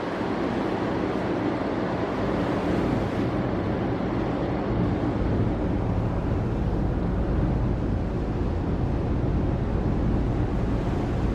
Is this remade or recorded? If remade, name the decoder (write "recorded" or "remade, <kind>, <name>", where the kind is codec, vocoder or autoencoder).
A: recorded